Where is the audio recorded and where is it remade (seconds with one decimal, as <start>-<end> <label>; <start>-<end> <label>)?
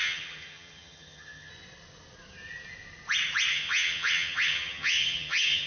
0.0-1.5 remade; 1.5-3.5 recorded; 3.5-5.7 remade